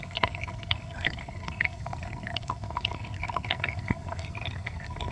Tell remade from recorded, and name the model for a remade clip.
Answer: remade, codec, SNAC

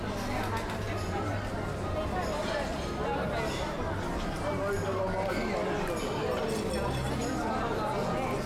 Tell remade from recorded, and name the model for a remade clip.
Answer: recorded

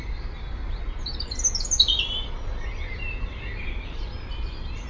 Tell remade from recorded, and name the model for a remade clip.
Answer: recorded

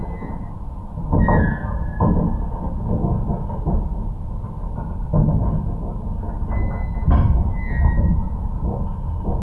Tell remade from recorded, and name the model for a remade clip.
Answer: recorded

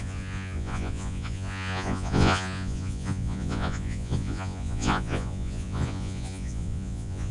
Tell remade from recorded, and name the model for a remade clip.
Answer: remade, vocoder, Vocos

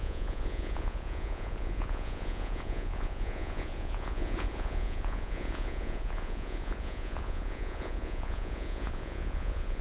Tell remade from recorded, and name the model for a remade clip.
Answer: remade, vocoder, Vocos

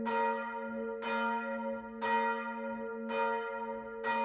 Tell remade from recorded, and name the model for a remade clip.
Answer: recorded